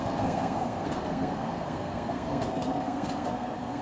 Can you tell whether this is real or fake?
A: fake